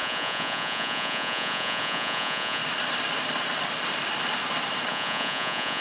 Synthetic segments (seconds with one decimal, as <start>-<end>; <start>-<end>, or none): 0.0-2.6; 4.9-5.8